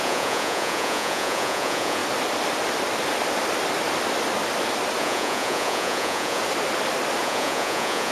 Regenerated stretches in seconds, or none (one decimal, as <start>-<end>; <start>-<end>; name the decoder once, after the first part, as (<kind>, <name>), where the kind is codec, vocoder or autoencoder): 0.0-2.0 (vocoder, Vocos); 5.0-6.4; 7.2-8.1